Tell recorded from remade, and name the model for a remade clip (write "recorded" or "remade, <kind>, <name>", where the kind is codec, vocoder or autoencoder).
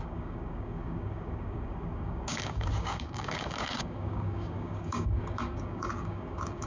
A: remade, codec, DAC